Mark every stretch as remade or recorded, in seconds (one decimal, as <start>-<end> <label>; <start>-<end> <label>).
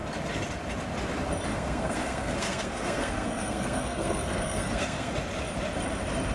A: 0.0-1.5 recorded; 1.5-5.1 remade; 5.1-6.3 recorded